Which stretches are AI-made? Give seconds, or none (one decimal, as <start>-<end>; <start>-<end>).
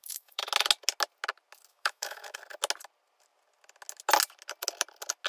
0.0-0.5; 1.7-2.4